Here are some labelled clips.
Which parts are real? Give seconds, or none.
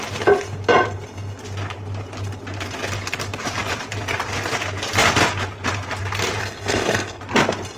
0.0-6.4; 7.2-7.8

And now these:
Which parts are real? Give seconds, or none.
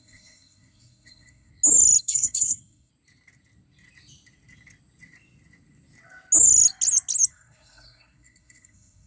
1.5-2.0; 2.9-7.3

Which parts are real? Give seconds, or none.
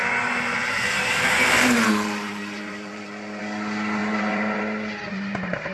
3.4-4.0; 4.6-5.7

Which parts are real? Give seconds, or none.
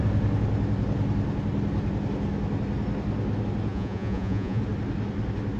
0.0-3.7; 4.6-5.6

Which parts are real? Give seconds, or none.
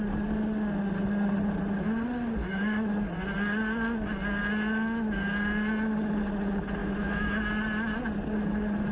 0.0-2.4; 2.9-6.8; 7.4-8.9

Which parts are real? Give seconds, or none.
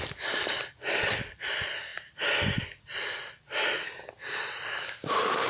0.0-5.5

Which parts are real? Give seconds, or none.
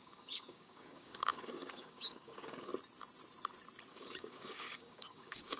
2.7-3.9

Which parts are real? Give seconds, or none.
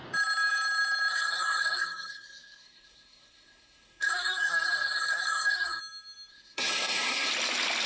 0.0-1.1; 5.8-6.3; 7.3-7.9